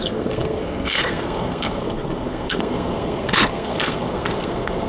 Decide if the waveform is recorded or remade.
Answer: remade